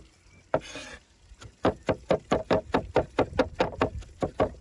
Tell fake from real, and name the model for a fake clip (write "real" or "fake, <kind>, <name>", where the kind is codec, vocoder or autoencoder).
real